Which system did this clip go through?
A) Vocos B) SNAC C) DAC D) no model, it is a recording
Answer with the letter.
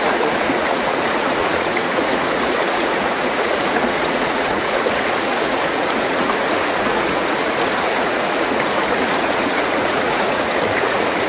A